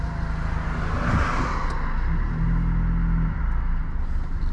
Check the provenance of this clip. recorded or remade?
recorded